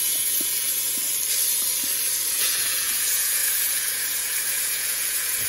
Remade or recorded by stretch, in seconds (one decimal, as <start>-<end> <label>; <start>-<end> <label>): 0.0-1.0 remade; 1.0-2.3 recorded; 2.3-5.5 remade